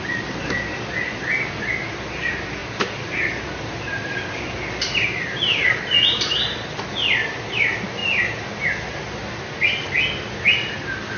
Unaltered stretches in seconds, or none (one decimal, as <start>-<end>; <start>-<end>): 0.0-11.2